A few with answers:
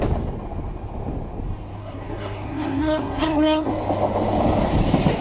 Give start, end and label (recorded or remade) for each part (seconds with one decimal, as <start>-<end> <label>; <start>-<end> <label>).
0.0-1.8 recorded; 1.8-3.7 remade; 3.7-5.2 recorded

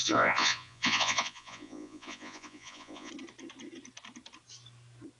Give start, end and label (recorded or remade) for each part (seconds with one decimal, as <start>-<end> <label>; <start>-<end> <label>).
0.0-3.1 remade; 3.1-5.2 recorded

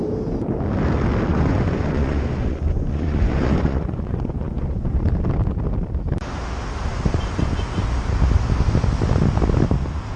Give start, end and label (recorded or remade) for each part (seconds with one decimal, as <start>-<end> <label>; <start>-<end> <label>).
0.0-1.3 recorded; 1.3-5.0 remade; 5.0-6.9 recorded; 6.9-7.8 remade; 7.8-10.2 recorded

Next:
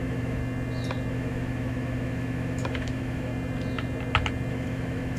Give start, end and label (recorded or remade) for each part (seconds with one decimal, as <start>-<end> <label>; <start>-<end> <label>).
0.0-0.4 remade; 0.4-1.1 recorded; 1.1-3.3 remade; 3.3-4.5 recorded; 4.5-5.2 remade

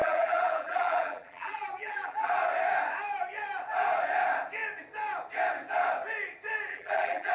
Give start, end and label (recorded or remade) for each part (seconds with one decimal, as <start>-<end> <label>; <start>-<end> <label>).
0.0-2.3 remade; 2.3-6.7 recorded; 6.7-7.3 remade

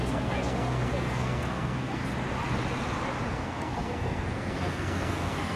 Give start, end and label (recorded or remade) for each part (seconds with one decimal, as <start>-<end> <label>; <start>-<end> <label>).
0.0-2.0 remade; 2.0-3.3 recorded; 3.3-5.6 remade

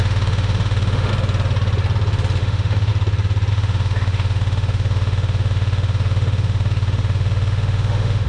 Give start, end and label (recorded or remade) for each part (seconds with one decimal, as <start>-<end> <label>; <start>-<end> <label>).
0.0-1.1 remade; 1.1-2.4 recorded; 2.4-2.9 remade; 2.9-3.5 recorded; 3.5-8.3 remade

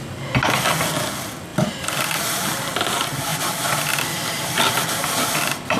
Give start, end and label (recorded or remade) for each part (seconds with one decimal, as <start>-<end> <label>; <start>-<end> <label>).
0.0-1.5 recorded; 1.5-2.5 remade; 2.5-3.3 recorded; 3.3-5.8 remade